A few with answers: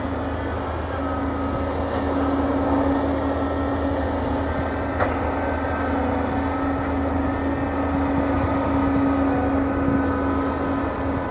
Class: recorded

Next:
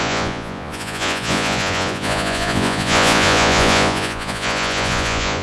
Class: remade